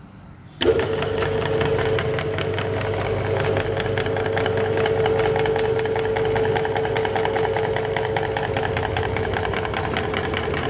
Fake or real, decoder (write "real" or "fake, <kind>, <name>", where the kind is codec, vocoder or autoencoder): real